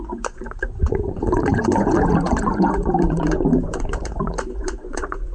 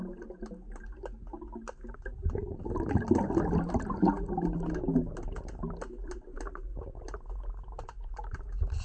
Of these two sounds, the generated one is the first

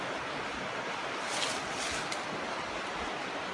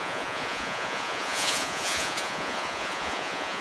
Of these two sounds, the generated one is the second